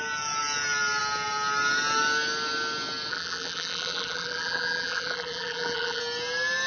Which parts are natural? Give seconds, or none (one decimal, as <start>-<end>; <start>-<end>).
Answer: 0.0-3.1; 6.0-6.7